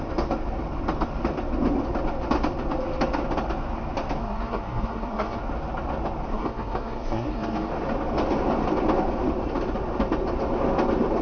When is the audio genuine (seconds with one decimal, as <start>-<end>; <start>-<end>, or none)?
0.0-4.2; 5.4-6.3; 7.7-11.2